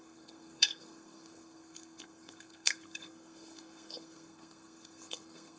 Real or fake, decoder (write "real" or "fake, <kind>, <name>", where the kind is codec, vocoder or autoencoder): fake, codec, SNAC